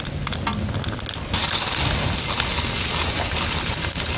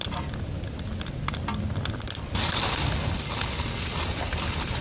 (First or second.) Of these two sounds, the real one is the first